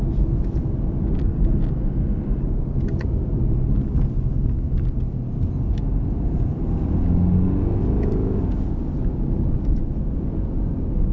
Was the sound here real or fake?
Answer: real